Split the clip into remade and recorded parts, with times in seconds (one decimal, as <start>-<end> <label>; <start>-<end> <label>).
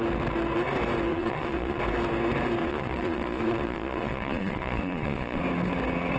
0.0-1.1 recorded; 1.1-1.8 remade; 1.8-2.6 recorded; 2.6-5.4 remade; 5.4-6.2 recorded